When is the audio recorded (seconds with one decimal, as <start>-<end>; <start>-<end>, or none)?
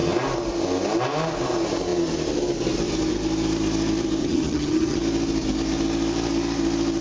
0.0-4.2; 5.0-7.0